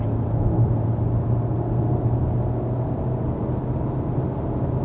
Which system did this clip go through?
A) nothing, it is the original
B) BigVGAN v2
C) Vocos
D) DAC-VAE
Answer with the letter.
A